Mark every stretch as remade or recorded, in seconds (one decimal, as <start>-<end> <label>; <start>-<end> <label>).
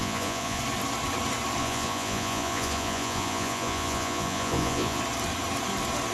0.0-0.6 remade; 0.6-1.6 recorded; 1.6-5.0 remade; 5.0-6.1 recorded